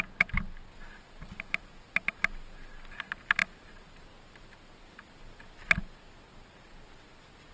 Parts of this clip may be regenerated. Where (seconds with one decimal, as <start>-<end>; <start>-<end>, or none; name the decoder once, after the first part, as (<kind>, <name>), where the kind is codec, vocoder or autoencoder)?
none